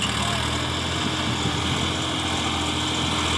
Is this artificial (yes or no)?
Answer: no